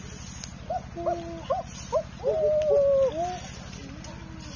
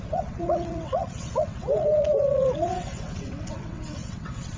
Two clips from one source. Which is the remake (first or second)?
second